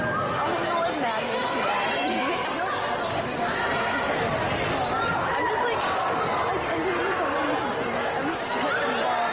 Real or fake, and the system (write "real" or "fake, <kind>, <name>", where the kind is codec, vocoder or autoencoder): real